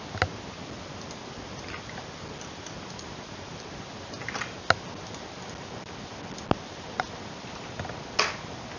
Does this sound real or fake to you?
real